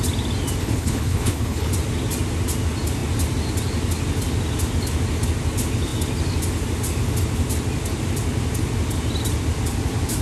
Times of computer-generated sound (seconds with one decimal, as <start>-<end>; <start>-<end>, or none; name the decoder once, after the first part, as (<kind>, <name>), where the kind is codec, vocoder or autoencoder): 0.6-1.7 (codec, HILCodec)